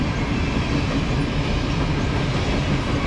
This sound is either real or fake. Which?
real